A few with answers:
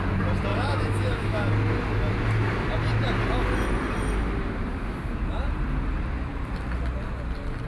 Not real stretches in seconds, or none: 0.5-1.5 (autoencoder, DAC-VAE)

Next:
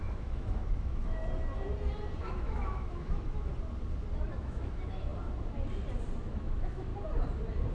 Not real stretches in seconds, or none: 0.0-1.2 (autoencoder, DAC-VAE); 2.2-3.5; 4.4-5.1; 6.3-6.9

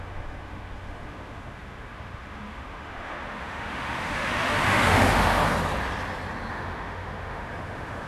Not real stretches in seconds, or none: 0.0-5.4 (autoencoder, DAC-VAE); 6.5-8.1

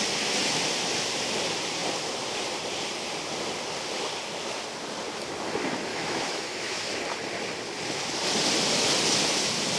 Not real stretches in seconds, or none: 5.9-6.9 (autoencoder, DAC-VAE)

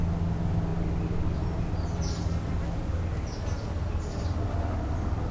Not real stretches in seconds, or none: none

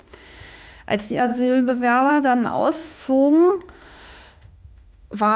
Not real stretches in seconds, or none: 0.0-5.4 (autoencoder, DAC-VAE)

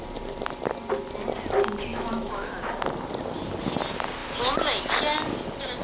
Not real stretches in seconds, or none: 1.9-2.5 (autoencoder, DAC-VAE)

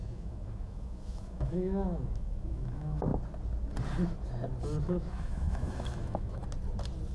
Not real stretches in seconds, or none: 0.0-3.1 (autoencoder, DAC-VAE); 4.8-6.4